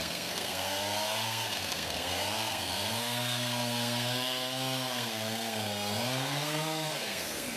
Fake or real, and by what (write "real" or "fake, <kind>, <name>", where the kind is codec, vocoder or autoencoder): fake, codec, SNAC